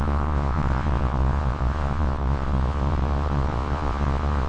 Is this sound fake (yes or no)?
yes